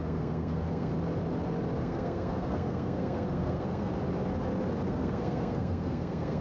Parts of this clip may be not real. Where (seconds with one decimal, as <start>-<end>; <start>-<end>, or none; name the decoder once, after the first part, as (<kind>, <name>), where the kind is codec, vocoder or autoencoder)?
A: 0.0-0.9 (codec, SNAC); 1.8-3.9; 4.9-6.4